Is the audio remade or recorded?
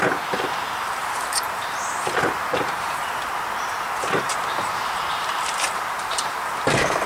remade